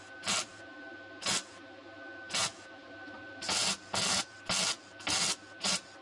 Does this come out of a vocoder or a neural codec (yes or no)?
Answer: no